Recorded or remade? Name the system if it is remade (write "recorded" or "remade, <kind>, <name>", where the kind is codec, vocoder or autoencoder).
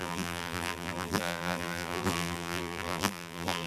remade, vocoder, BigVGAN v2